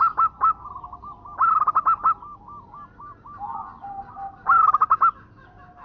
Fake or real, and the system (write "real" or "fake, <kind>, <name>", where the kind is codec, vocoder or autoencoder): real